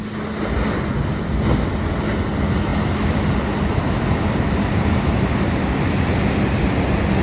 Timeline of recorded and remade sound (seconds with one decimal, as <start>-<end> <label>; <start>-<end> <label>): 0.0-7.2 recorded